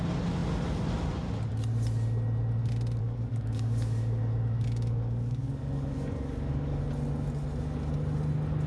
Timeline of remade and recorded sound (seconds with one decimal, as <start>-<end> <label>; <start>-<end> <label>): 0.0-3.0 recorded; 3.0-6.8 remade; 6.8-8.7 recorded